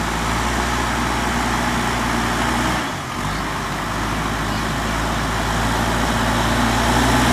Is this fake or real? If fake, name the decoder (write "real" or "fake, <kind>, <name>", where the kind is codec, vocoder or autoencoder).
real